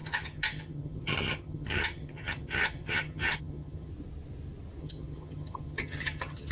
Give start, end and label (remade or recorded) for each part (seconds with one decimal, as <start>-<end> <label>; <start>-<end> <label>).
0.0-3.9 remade; 3.9-4.8 recorded; 4.8-6.5 remade